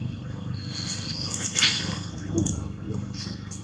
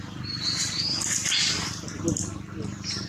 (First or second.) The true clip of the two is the second